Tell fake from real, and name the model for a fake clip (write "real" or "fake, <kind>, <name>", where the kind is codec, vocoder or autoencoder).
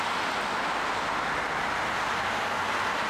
real